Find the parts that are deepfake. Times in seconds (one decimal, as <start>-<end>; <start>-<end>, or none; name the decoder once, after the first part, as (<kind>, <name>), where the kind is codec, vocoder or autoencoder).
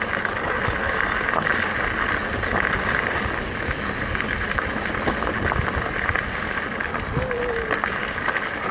none